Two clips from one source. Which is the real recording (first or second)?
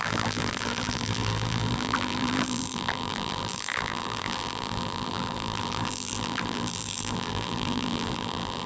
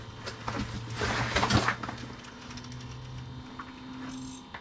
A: second